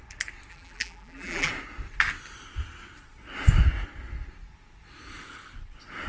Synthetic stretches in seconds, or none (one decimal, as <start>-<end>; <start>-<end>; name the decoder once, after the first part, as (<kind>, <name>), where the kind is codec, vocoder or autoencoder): 0.5-1.5 (vocoder, BigVGAN v2)